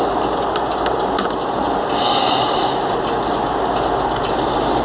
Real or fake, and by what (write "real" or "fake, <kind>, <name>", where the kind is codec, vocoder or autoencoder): real